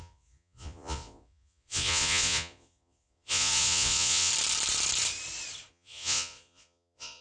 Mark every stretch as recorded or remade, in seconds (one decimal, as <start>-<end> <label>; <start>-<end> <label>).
0.0-4.3 remade; 4.3-5.7 recorded; 5.7-7.2 remade